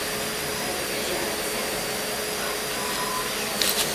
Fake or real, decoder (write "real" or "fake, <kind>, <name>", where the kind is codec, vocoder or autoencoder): real